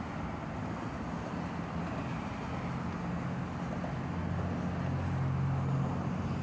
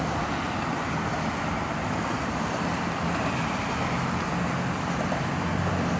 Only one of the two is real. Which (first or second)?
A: first